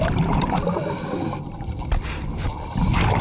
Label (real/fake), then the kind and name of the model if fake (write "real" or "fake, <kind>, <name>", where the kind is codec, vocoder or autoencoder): real